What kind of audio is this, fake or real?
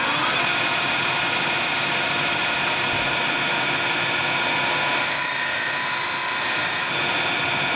real